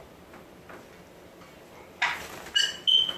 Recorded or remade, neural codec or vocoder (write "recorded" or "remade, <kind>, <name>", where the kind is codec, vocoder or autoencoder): recorded